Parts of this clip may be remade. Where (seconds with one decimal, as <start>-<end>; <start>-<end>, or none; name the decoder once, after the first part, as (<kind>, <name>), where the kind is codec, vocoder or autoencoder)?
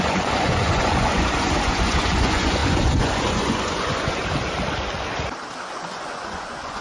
0.0-4.2 (vocoder, Vocos); 5.7-6.8